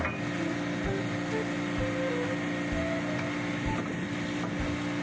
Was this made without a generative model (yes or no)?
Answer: yes